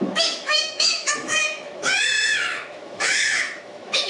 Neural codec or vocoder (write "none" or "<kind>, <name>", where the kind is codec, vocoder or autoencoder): autoencoder, DAC-VAE